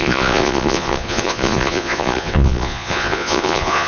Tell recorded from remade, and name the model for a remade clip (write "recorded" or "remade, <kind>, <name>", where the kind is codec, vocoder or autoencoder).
remade, vocoder, Vocos